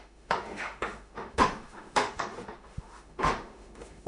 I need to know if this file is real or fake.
fake